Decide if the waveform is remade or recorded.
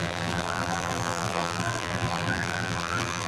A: remade